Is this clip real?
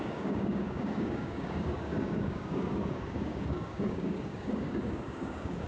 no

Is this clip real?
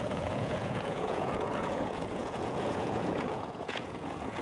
no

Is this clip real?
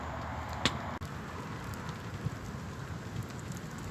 yes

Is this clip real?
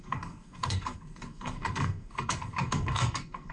no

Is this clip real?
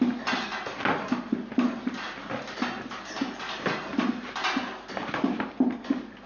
yes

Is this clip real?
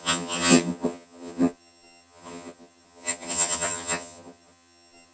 no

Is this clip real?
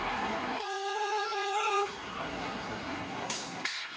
no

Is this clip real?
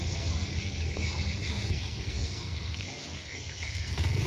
no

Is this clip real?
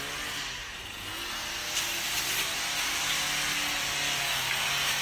yes